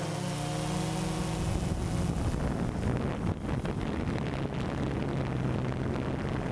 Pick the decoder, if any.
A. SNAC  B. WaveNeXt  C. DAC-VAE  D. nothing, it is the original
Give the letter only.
D